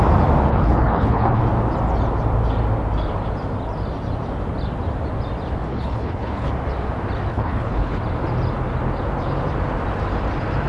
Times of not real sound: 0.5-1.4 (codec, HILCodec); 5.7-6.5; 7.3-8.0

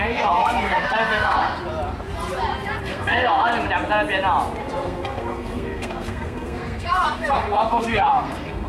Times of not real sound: 0.0-1.6 (codec, SNAC); 2.8-3.5; 4.6-8.7

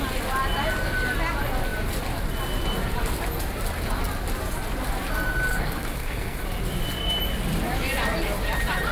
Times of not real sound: 5.5-6.4 (codec, SNAC)

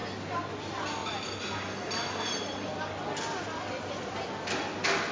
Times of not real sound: none